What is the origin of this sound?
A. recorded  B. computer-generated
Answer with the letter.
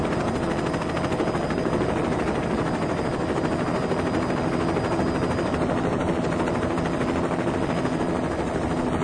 A